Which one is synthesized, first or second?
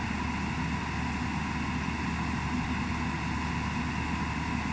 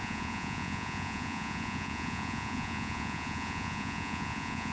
second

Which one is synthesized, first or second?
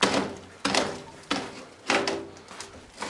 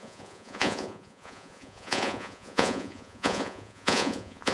second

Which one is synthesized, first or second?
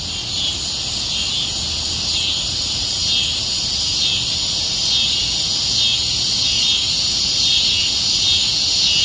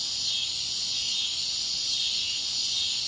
second